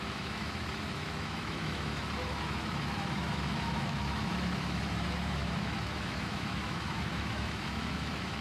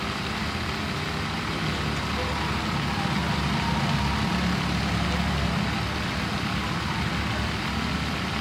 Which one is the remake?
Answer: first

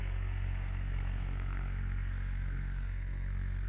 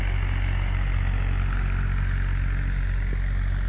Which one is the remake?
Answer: first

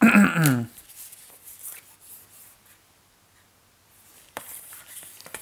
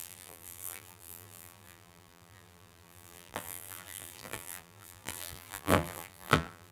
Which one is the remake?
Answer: second